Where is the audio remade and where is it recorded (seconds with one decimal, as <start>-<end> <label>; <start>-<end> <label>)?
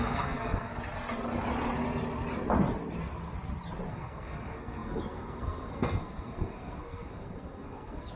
0.0-0.7 remade; 0.7-3.9 recorded; 3.9-8.2 remade